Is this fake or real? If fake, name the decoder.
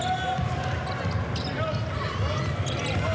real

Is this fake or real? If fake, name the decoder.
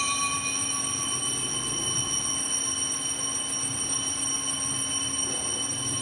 real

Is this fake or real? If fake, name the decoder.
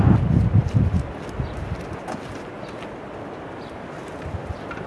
real